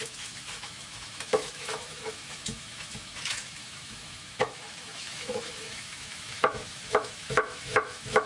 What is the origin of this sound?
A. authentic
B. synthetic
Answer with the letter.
B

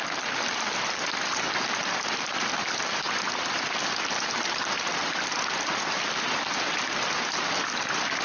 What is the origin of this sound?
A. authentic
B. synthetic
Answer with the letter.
A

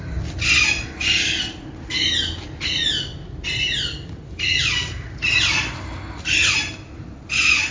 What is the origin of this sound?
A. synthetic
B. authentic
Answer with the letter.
B